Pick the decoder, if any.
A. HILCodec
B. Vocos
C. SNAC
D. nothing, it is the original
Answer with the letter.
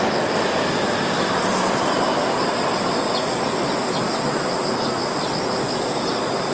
D